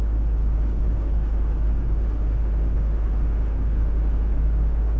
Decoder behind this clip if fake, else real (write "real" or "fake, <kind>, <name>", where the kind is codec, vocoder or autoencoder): fake, autoencoder, DAC-VAE